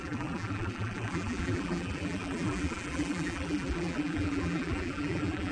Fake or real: fake